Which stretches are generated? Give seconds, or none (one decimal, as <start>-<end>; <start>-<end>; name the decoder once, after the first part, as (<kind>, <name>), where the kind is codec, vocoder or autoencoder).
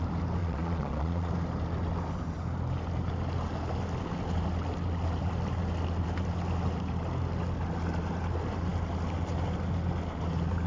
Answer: 0.4-1.3 (vocoder, Vocos)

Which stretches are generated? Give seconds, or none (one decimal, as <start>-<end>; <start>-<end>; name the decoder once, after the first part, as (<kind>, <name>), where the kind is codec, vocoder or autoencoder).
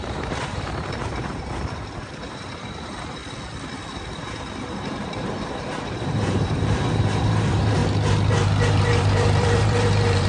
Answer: 0.0-3.2 (vocoder, BigVGAN v2); 4.4-7.8; 8.7-10.3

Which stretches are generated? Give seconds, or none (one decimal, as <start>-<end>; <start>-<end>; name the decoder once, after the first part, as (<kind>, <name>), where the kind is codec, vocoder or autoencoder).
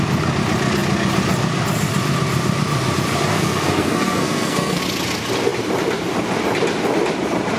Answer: 3.3-4.8 (codec, SNAC)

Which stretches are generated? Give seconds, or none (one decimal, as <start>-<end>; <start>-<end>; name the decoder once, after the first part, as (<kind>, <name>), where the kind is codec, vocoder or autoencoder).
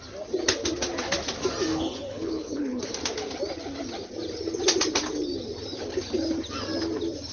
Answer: 1.7-2.8 (codec, HILCodec)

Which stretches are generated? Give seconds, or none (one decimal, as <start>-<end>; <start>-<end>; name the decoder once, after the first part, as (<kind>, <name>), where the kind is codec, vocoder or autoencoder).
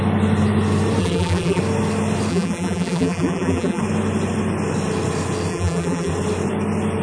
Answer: 1.0-1.6 (vocoder, BigVGAN v2); 2.3-3.8; 5.5-6.1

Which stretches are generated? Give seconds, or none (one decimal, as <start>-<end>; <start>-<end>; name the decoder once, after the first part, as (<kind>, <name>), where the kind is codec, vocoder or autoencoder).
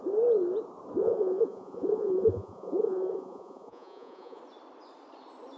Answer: 1.0-4.4 (vocoder, Vocos)